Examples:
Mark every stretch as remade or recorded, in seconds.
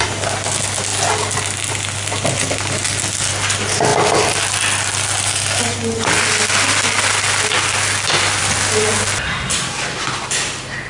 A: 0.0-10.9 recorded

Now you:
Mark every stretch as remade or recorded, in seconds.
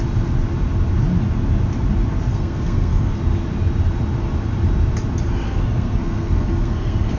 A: 0.0-2.3 recorded; 2.3-3.1 remade; 3.1-5.4 recorded; 5.4-7.2 remade